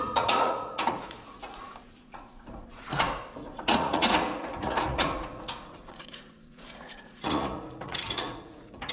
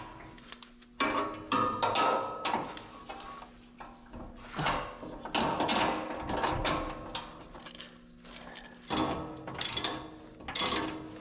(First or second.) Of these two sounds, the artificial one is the first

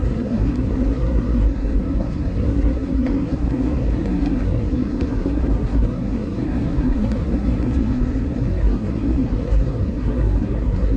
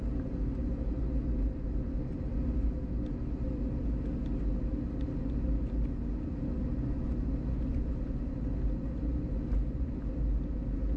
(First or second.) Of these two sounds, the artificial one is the first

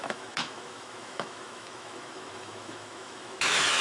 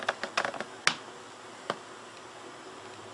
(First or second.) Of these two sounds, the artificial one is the first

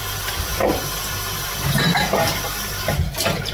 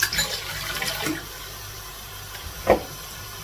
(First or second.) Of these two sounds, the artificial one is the second